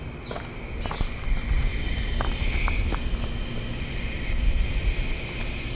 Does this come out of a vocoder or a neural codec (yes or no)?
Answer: no